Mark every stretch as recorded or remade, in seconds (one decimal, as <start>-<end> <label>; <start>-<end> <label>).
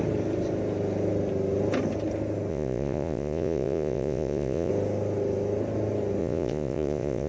0.0-2.5 recorded; 2.5-4.7 remade; 4.7-6.2 recorded; 6.2-7.3 remade